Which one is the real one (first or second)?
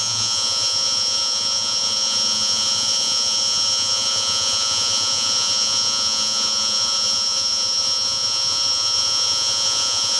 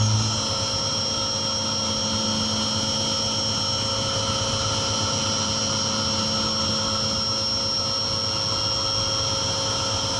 second